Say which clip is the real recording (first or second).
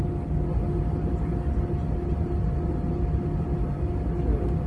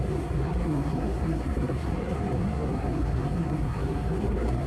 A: first